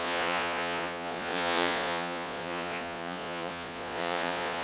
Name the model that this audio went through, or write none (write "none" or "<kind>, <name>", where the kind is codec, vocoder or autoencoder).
vocoder, Vocos